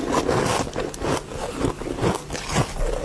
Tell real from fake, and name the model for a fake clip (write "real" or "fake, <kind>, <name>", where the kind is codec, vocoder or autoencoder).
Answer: real